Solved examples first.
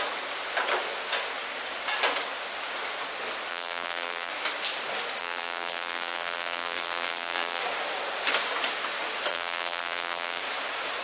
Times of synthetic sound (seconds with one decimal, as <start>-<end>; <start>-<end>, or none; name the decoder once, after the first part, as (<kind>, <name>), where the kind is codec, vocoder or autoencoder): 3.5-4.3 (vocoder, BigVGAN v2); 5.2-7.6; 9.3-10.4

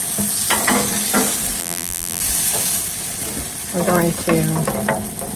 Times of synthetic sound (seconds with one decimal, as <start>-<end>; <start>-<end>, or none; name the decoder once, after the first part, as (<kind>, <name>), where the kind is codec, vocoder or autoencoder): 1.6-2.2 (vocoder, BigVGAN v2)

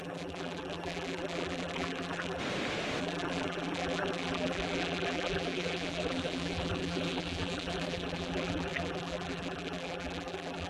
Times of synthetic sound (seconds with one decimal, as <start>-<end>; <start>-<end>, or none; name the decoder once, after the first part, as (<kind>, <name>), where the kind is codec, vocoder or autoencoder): 0.0-2.4 (vocoder, BigVGAN v2); 3.0-10.7

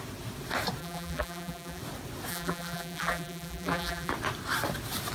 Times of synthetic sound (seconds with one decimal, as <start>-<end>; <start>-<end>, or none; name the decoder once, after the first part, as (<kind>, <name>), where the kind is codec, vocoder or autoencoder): 0.8-1.8 (vocoder, BigVGAN v2); 2.3-4.1

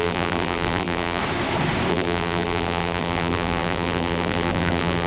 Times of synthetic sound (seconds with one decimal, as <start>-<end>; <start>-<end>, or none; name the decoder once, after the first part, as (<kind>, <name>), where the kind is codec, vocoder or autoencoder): 0.0-1.2 (vocoder, BigVGAN v2); 1.9-5.1